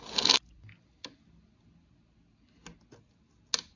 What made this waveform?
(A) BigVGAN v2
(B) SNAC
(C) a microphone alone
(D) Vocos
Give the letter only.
C